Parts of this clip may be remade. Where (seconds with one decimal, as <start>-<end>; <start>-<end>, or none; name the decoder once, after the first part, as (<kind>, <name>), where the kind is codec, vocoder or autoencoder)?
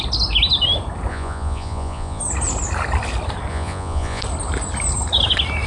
1.1-2.2 (vocoder, Vocos); 3.5-4.2